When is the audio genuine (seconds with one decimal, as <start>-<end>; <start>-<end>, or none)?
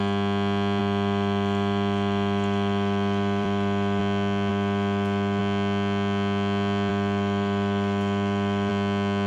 0.0-0.8; 4.0-4.5; 5.4-6.9; 8.7-9.3